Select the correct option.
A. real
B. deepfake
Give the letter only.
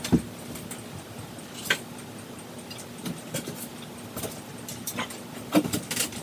A